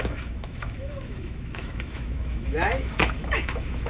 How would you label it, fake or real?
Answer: fake